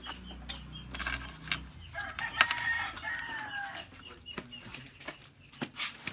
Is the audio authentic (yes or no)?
yes